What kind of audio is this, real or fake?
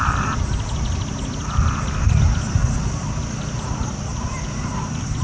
real